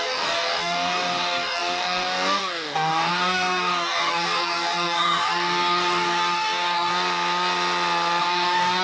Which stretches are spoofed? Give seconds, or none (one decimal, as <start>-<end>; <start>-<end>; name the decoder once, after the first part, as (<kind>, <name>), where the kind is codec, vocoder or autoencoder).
0.0-6.9 (codec, DAC); 8.2-8.8